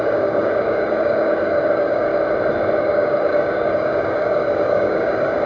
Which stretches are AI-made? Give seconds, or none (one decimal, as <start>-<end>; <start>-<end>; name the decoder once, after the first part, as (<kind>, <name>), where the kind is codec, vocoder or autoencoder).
0.0-2.1 (codec, DAC); 2.8-5.5